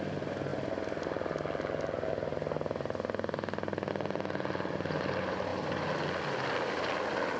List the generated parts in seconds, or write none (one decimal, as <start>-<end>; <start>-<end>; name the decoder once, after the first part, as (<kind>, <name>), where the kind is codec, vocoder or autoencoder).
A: none